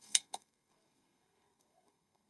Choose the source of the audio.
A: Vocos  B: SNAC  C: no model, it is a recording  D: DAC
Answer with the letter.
B